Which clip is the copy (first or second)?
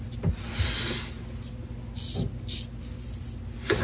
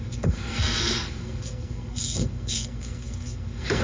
second